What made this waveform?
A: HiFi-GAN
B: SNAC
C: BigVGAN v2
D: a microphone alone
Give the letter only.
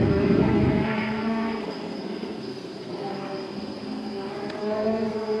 B